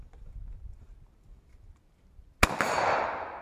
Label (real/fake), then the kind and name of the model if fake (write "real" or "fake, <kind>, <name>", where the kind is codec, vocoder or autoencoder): real